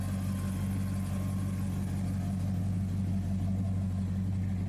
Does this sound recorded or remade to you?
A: recorded